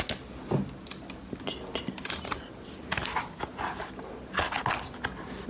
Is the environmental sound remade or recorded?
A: recorded